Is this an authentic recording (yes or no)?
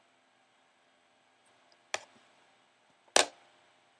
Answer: yes